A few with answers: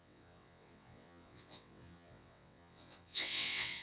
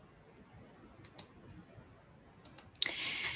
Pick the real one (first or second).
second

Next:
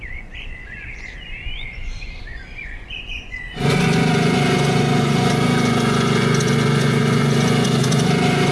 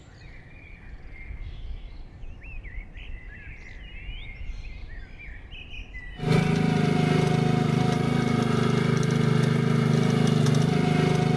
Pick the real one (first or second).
second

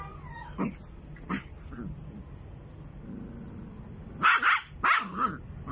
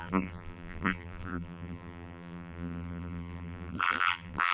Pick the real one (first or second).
first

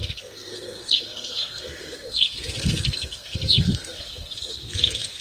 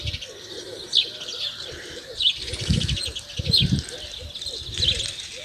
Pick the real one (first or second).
second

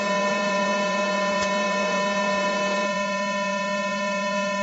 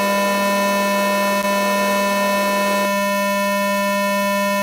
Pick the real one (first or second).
second